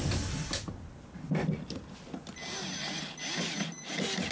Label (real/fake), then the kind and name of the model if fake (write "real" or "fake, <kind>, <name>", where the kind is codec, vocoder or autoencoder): real